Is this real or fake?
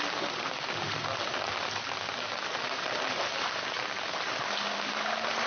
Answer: real